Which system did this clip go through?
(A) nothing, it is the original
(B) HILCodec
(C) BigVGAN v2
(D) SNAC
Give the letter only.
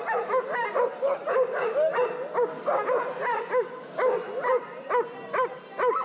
A